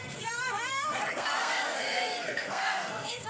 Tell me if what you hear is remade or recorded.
remade